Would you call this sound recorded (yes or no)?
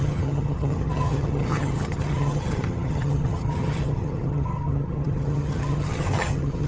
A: no